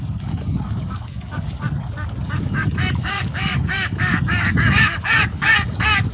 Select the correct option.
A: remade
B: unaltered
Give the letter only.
A